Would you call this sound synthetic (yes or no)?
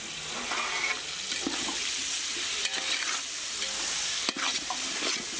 no